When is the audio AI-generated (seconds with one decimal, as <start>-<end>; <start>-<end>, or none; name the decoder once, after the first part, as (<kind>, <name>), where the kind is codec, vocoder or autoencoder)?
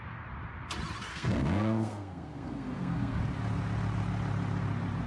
1.1-3.2 (codec, SNAC)